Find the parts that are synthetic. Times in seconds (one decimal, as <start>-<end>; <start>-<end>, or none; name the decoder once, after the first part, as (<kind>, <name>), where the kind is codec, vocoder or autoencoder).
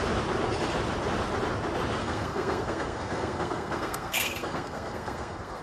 2.0-5.6 (codec, SNAC)